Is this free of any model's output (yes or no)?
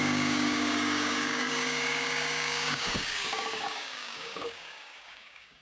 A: no